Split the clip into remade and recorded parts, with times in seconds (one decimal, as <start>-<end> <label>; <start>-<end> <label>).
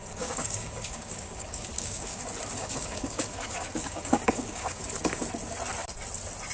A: 0.0-2.2 remade; 2.2-2.6 recorded; 2.6-4.8 remade; 4.8-6.5 recorded